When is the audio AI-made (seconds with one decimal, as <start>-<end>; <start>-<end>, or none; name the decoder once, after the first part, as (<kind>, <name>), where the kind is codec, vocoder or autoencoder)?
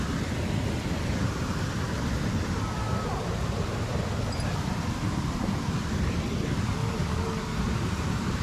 6.8-7.4 (codec, DAC)